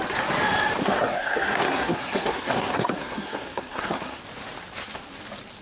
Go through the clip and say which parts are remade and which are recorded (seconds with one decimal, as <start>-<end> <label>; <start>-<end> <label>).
0.0-0.8 recorded; 0.8-4.2 remade; 4.2-5.6 recorded

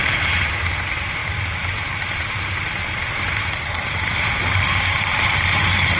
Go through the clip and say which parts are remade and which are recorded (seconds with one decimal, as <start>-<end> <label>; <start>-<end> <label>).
0.0-6.0 recorded

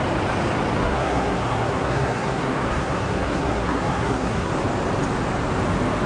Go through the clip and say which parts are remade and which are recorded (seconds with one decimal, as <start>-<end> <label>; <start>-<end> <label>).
0.0-0.8 recorded; 0.8-4.5 remade; 4.5-6.1 recorded

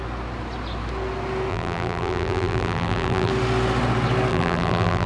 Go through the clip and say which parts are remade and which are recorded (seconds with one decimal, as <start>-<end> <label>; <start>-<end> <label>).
0.0-1.5 recorded; 1.5-3.3 remade; 3.3-4.3 recorded; 4.3-5.1 remade

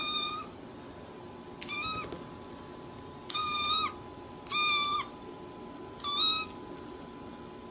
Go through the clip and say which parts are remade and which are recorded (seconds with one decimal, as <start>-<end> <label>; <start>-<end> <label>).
0.0-0.8 remade; 0.8-7.7 recorded

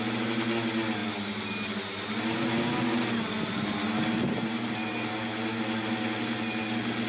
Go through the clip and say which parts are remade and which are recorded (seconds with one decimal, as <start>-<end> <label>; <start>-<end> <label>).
0.0-7.1 recorded